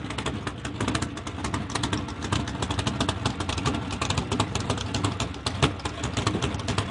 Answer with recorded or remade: recorded